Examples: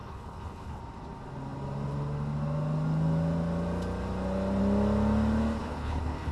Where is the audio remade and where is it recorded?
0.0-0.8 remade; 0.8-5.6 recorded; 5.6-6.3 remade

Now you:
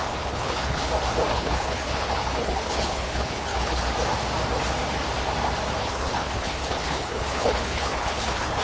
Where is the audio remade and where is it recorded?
0.0-0.9 remade; 0.9-1.3 recorded; 1.3-3.8 remade; 3.8-5.8 recorded; 5.8-8.6 remade

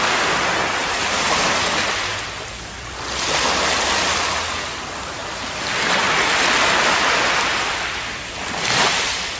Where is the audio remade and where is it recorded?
0.0-9.4 recorded

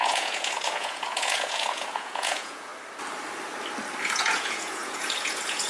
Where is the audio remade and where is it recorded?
0.0-2.7 remade; 2.7-4.0 recorded; 4.0-5.7 remade

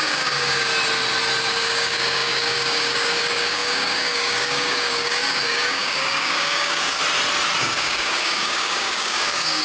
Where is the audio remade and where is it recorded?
0.0-0.7 remade; 0.7-1.4 recorded; 1.4-7.0 remade; 7.0-7.6 recorded; 7.6-9.6 remade

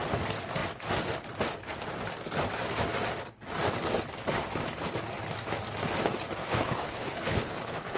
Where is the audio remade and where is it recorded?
0.0-6.4 recorded; 6.4-8.0 remade

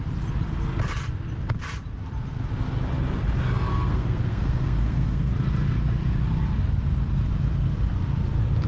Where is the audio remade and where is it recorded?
0.0-3.7 recorded; 3.7-5.3 remade; 5.3-8.7 recorded

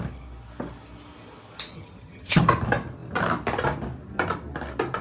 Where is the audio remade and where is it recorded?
0.0-1.7 recorded; 1.7-2.4 remade; 2.4-5.0 recorded